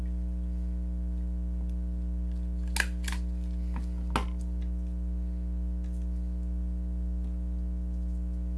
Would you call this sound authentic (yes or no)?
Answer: yes